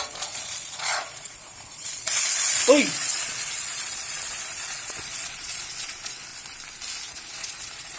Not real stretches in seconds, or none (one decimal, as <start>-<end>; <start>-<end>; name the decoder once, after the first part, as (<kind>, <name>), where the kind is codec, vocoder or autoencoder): 0.0-6.3 (vocoder, Vocos); 7.1-8.0